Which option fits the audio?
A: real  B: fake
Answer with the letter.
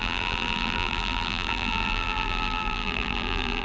B